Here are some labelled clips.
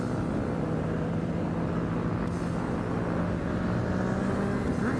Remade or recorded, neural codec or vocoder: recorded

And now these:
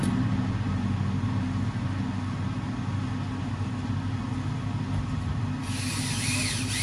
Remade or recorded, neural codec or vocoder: recorded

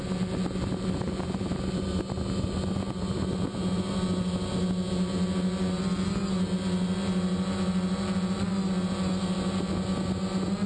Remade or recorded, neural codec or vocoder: recorded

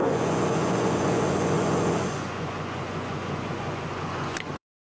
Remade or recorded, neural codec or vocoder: remade, vocoder, Vocos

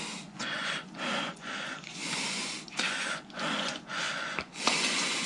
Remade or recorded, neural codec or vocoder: remade, vocoder, Vocos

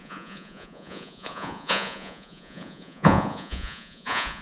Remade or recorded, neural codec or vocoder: remade, vocoder, Vocos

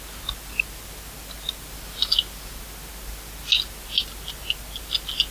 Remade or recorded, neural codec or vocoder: recorded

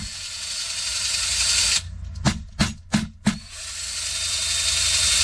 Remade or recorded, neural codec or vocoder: recorded